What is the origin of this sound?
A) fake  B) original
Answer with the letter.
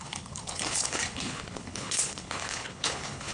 A